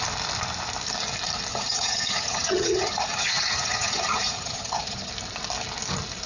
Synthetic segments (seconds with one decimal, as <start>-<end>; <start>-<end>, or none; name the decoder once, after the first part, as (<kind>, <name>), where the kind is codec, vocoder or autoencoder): 1.5-5.1 (vocoder, HiFi-GAN)

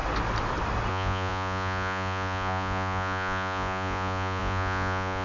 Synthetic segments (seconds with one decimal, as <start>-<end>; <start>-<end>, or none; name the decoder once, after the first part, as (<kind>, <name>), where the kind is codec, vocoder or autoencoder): 0.9-5.2 (vocoder, Vocos)

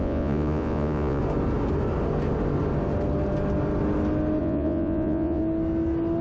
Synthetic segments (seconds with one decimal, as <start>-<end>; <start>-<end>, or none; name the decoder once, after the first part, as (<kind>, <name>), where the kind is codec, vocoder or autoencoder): 0.0-1.2 (vocoder, Vocos); 4.4-5.4

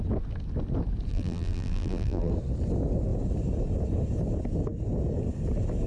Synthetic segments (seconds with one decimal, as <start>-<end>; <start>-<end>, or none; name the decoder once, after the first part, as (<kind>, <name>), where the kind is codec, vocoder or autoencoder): 1.1-2.3 (vocoder, BigVGAN v2)

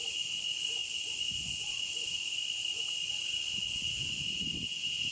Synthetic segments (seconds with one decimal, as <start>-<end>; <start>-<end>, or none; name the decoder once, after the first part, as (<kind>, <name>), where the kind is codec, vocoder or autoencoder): 0.8-3.1 (vocoder, Vocos)